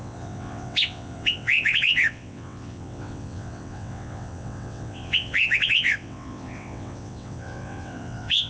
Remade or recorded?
remade